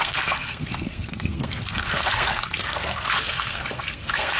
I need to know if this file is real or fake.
fake